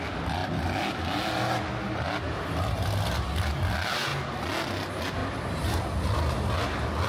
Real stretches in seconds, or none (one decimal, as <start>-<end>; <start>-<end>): 0.0-5.2; 5.8-7.1